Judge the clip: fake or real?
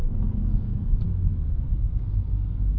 fake